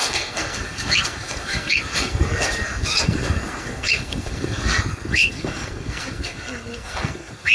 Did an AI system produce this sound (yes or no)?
yes